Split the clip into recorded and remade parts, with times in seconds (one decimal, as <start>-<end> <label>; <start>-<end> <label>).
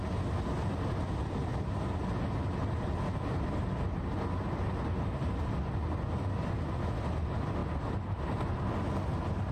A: 0.0-9.5 recorded